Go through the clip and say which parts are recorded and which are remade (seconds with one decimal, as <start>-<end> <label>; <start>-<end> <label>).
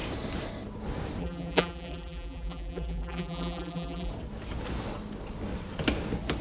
0.0-1.2 recorded; 1.2-4.1 remade; 4.1-6.4 recorded